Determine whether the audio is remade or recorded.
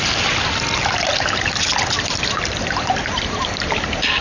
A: recorded